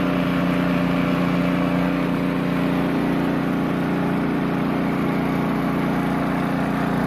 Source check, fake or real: real